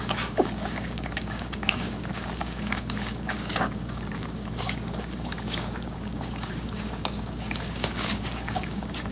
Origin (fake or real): fake